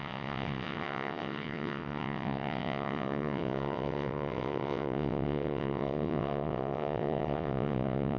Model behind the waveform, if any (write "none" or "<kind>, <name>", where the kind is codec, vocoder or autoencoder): vocoder, WaveNeXt